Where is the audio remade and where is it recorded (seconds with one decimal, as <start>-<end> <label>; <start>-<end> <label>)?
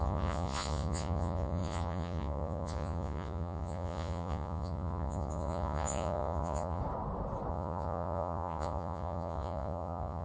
0.0-6.8 remade; 6.8-7.5 recorded; 7.5-10.2 remade